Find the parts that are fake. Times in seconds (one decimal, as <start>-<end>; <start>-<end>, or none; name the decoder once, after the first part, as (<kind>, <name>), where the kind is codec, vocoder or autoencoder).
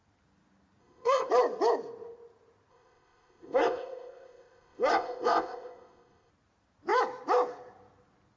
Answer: 0.8-1.3 (codec, ZipCodec); 2.7-6.3